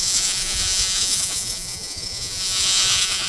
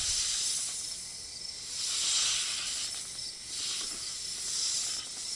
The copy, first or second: first